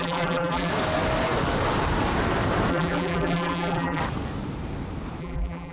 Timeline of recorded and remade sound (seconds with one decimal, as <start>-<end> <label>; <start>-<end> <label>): 0.0-0.7 remade; 0.7-2.7 recorded; 2.7-4.0 remade; 4.0-5.2 recorded; 5.2-5.7 remade